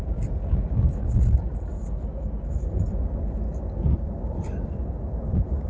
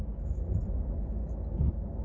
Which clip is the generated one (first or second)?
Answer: first